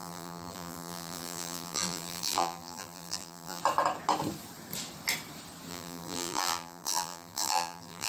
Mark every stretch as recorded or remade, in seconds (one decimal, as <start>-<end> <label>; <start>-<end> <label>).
0.0-3.6 remade; 3.6-5.7 recorded; 5.7-8.1 remade